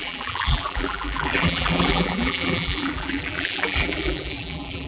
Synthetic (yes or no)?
yes